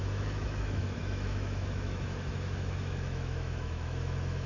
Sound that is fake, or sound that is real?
fake